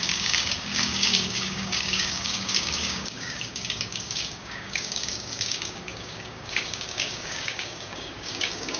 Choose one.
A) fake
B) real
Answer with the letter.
A